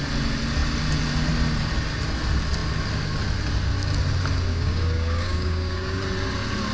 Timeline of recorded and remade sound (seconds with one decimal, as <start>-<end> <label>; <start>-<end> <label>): 0.0-4.5 recorded; 4.5-6.0 remade; 6.0-6.7 recorded